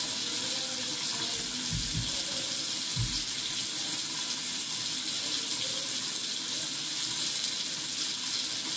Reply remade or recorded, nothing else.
recorded